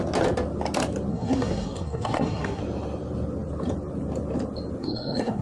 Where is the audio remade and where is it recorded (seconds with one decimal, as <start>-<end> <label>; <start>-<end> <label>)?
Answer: 0.0-1.1 recorded; 1.1-2.6 remade; 2.6-4.8 recorded; 4.8-5.4 remade